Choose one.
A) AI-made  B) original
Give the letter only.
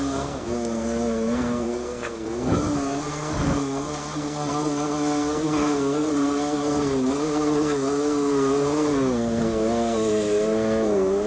A